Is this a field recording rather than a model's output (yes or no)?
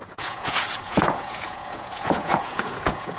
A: no